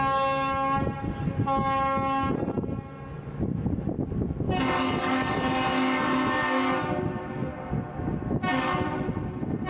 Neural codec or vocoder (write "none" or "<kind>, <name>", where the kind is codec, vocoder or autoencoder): none